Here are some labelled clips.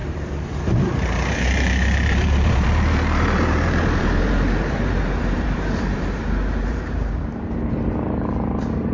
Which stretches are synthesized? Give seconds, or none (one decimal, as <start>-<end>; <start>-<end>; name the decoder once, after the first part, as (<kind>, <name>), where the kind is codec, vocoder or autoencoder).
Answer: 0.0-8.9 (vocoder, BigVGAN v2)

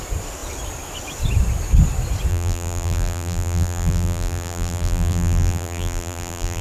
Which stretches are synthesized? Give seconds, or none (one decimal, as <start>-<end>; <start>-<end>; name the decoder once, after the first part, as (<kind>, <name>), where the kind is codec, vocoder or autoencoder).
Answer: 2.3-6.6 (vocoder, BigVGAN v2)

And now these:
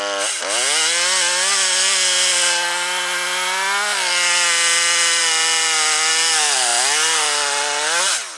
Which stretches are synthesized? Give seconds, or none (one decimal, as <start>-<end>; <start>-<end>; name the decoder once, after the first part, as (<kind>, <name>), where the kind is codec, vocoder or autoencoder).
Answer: none

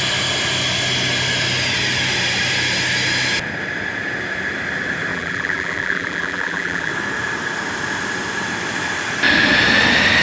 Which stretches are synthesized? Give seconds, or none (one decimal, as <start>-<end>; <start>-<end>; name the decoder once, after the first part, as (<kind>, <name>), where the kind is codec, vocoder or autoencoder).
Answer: 5.1-6.9 (vocoder, BigVGAN v2)

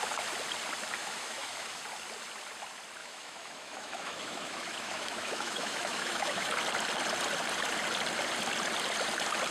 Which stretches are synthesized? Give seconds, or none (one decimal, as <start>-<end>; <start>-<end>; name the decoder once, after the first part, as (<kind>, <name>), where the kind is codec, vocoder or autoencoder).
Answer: 1.0-1.8 (autoencoder, DAC-VAE); 3.0-6.5

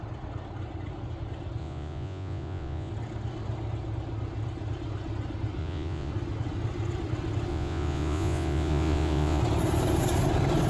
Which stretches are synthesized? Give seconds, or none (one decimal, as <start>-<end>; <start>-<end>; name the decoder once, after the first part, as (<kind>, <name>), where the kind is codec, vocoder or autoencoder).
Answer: 1.6-2.9 (vocoder, Vocos); 5.6-6.1; 7.5-9.4